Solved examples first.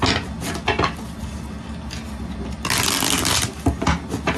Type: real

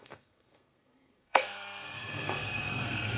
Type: fake